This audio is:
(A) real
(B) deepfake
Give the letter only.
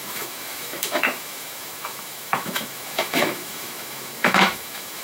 B